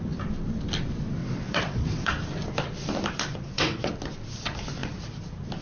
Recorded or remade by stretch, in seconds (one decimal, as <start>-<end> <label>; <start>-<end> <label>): 0.0-1.2 recorded; 1.2-2.1 remade; 2.1-3.3 recorded; 3.3-3.9 remade; 3.9-5.6 recorded

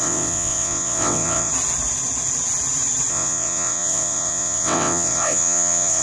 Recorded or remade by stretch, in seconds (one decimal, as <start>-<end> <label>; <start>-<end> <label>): 0.0-1.5 remade; 1.5-3.1 recorded; 3.1-6.0 remade

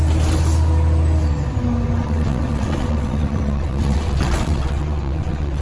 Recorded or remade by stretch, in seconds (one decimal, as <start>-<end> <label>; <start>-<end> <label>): 0.0-2.0 recorded; 2.0-5.6 remade

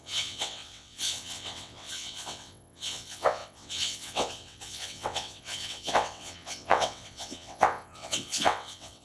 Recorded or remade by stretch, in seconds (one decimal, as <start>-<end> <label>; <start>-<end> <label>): 0.0-9.0 remade

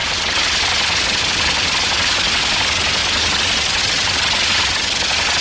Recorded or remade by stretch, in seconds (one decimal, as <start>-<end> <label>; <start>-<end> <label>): 0.0-5.4 recorded

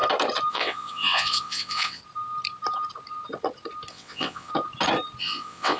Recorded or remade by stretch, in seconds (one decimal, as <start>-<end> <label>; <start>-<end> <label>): 0.0-0.5 recorded; 0.5-2.0 remade; 2.0-3.9 recorded; 3.9-4.5 remade; 4.5-5.2 recorded; 5.2-5.8 remade